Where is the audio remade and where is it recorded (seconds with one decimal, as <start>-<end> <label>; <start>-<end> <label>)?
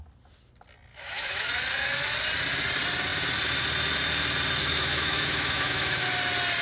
0.0-0.9 recorded; 0.9-1.5 remade; 1.5-4.6 recorded; 4.6-6.1 remade; 6.1-6.6 recorded